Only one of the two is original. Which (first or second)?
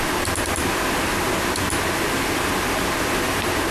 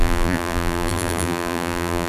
first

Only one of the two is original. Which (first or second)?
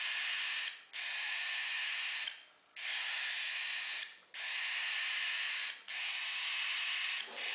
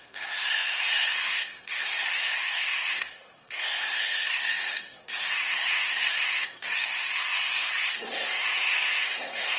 first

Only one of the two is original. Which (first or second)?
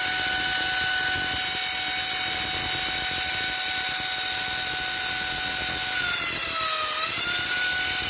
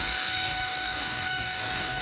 first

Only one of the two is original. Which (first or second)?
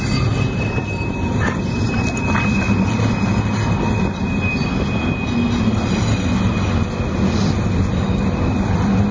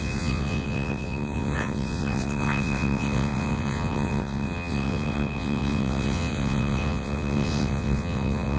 first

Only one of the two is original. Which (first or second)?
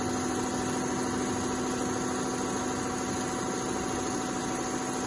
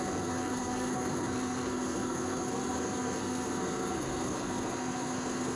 first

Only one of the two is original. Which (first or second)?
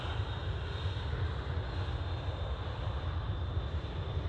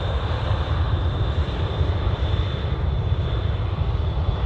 first